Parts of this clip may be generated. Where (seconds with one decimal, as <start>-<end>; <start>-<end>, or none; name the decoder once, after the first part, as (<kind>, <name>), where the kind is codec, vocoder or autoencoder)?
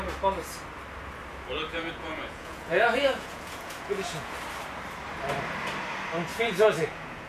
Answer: 1.7-4.3 (vocoder, Vocos); 6.3-7.3